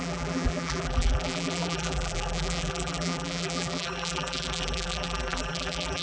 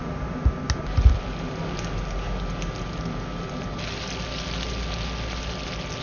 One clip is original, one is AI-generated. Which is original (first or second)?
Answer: second